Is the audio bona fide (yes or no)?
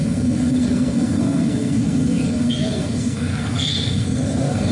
no